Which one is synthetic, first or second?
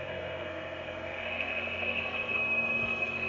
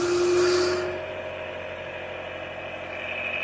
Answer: first